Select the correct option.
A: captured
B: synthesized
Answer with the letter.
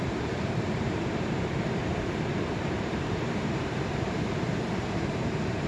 B